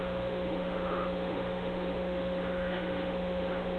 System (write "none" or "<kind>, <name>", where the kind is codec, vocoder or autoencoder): autoencoder, DAC-VAE